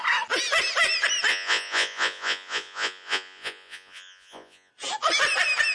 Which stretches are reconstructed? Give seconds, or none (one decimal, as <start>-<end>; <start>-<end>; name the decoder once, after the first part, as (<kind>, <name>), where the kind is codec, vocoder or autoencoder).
1.3-4.7 (vocoder, Vocos)